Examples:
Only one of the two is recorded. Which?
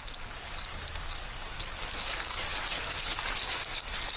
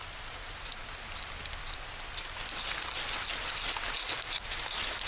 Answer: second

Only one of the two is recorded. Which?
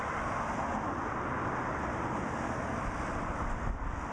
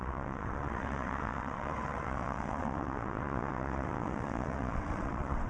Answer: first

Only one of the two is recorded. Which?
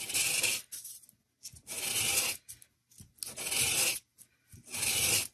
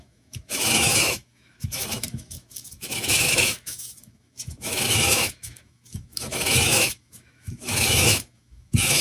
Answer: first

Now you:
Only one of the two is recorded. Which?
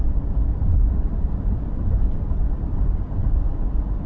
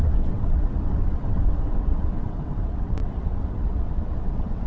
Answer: first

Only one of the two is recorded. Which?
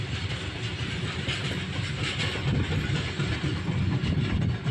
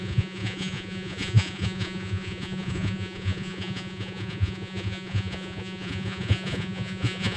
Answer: first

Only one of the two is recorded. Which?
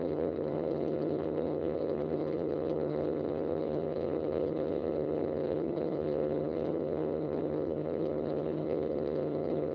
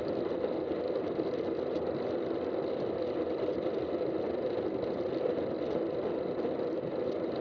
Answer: second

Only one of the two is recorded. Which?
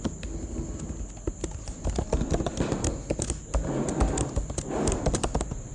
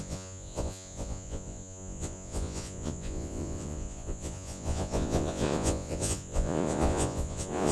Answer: first